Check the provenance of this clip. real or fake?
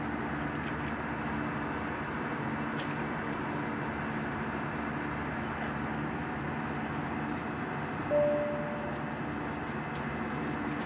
real